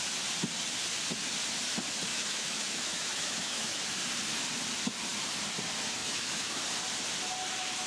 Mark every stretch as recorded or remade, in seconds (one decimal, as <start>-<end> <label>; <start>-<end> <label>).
0.0-2.1 recorded; 2.1-3.8 remade; 3.8-6.0 recorded; 6.0-6.6 remade; 6.6-7.9 recorded

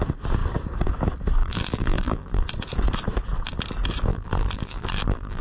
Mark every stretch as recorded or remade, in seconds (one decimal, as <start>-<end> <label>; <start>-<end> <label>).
0.0-1.4 recorded; 1.4-2.4 remade; 2.4-4.1 recorded; 4.1-5.4 remade

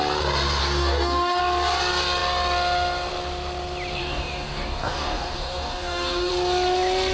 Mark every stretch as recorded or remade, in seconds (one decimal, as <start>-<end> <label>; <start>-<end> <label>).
0.0-0.6 recorded; 0.6-1.4 remade; 1.4-4.0 recorded; 4.0-6.3 remade; 6.3-7.1 recorded

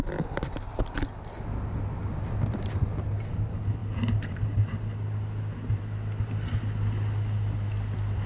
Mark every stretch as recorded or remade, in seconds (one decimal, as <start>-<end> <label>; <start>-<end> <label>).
0.0-3.8 recorded; 3.8-4.4 remade; 4.4-8.3 recorded

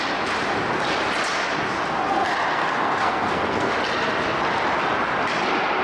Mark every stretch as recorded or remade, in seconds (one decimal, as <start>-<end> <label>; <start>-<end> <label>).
0.0-2.5 recorded; 2.5-3.7 remade; 3.7-5.8 recorded